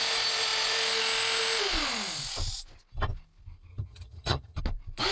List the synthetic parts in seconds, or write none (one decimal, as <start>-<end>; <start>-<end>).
3.7-4.6